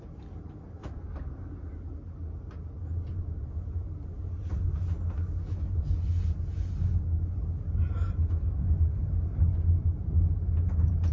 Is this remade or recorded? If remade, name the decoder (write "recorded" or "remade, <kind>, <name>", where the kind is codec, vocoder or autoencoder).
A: recorded